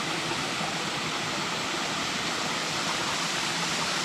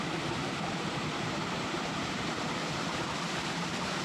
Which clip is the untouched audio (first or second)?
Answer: first